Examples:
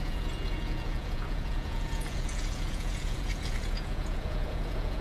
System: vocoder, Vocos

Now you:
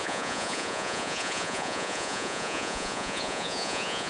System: vocoder, Vocos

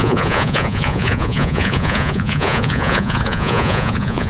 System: vocoder, Vocos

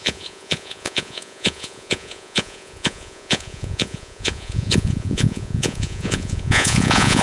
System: vocoder, Vocos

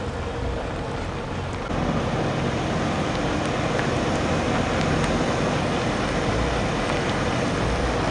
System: none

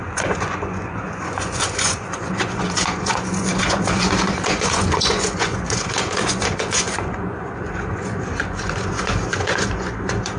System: vocoder, Vocos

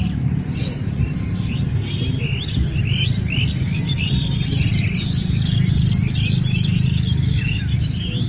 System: none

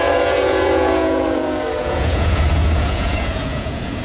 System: vocoder, Vocos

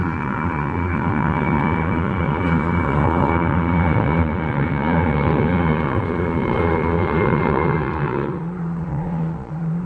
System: vocoder, Vocos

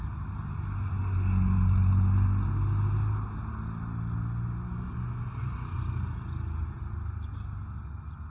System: none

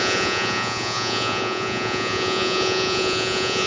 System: vocoder, Vocos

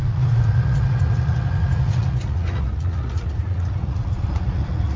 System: vocoder, Vocos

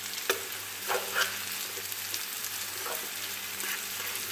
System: none